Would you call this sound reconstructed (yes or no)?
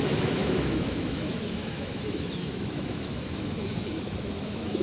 yes